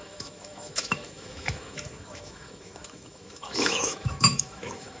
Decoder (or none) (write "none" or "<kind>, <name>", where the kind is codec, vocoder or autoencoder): autoencoder, DAC-VAE